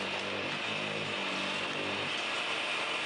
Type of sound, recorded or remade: recorded